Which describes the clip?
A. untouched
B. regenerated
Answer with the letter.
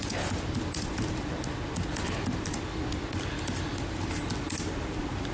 A